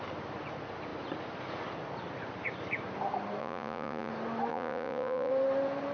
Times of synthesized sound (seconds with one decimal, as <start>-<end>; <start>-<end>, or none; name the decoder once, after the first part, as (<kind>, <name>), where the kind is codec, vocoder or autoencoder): 3.4-4.1 (vocoder, Vocos); 4.5-5.3